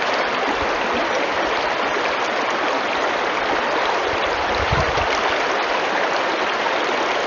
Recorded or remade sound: recorded